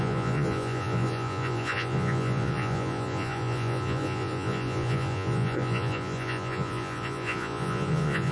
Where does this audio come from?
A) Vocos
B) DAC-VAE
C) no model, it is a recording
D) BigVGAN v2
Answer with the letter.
A